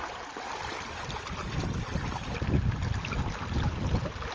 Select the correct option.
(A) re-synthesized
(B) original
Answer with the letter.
B